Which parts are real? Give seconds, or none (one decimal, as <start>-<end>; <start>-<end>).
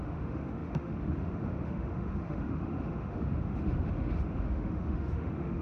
none